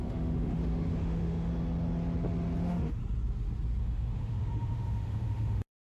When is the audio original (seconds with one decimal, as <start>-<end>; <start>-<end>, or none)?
1.5-2.6; 3.0-3.8